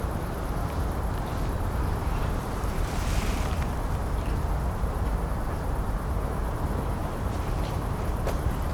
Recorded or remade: remade